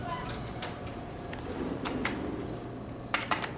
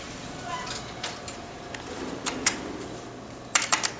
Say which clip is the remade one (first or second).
first